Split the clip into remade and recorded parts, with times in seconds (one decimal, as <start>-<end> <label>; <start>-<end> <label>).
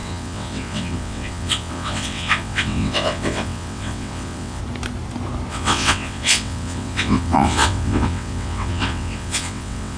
0.0-4.6 remade; 4.6-5.5 recorded; 5.5-10.0 remade